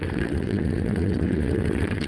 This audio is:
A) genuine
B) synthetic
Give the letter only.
B